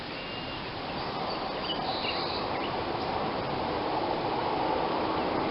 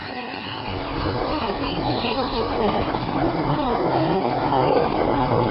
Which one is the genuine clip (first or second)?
first